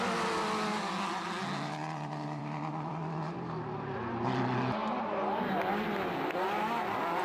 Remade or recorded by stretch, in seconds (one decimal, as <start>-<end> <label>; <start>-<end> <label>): 0.0-7.2 recorded